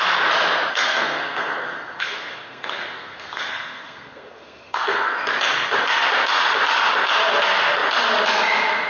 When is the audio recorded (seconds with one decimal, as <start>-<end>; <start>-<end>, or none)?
0.0-0.7; 5.2-8.9